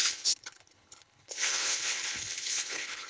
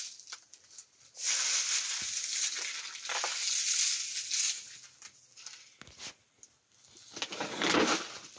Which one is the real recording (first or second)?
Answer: second